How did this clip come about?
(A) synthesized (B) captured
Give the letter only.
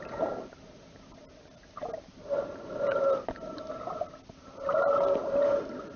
B